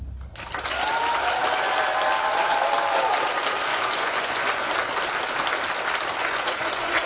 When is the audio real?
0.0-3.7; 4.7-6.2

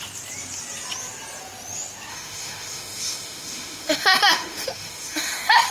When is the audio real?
0.0-2.1

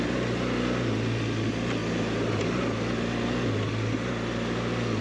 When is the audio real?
0.0-5.0

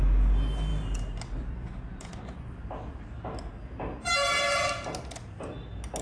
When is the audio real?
0.0-6.0

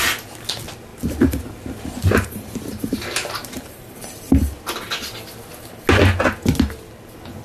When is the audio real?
0.0-0.9; 4.3-7.4

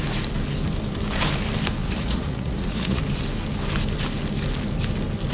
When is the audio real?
0.0-1.8; 3.0-5.3

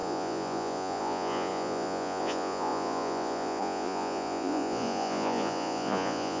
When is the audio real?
none